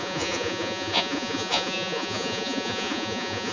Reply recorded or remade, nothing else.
remade